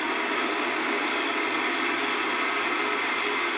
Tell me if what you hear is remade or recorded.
recorded